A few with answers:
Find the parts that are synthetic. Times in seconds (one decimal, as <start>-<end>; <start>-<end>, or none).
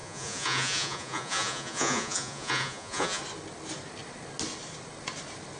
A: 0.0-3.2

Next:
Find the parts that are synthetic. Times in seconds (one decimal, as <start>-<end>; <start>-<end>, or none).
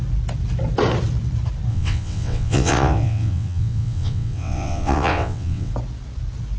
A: 1.7-5.7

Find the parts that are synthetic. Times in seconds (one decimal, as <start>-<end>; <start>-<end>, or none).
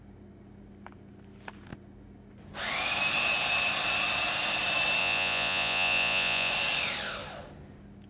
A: 5.0-6.5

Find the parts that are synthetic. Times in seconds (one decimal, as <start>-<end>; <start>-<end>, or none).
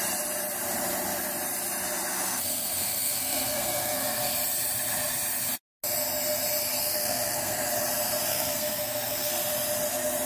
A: 2.1-4.3; 6.8-7.7; 8.3-9.3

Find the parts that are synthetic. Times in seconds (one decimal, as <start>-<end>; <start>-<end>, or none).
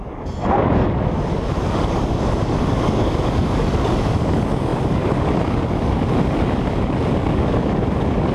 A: 0.0-8.3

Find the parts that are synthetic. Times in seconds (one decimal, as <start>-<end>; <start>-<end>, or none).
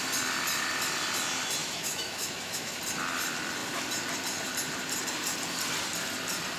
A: 1.6-2.8